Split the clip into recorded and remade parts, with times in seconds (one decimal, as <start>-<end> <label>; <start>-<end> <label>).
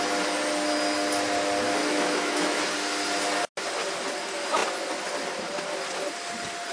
0.0-1.8 recorded; 1.8-2.6 remade; 2.6-6.7 recorded